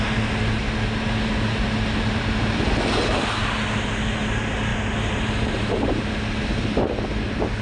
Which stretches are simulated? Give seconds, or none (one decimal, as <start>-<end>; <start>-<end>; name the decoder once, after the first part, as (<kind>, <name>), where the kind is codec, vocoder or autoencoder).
none